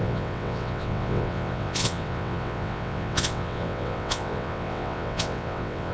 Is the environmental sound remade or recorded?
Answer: remade